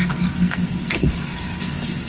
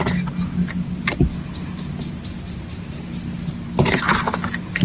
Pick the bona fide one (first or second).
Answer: second